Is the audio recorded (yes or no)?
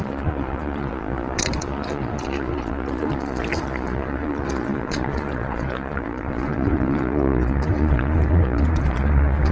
no